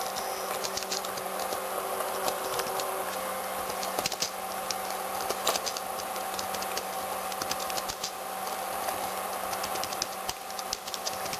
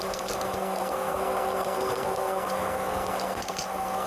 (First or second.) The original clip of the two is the first